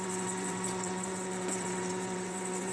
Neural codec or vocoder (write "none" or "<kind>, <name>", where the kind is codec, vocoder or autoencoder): vocoder, WaveNeXt